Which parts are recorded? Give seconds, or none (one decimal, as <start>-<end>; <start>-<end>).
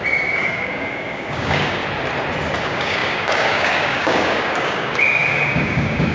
1.8-2.6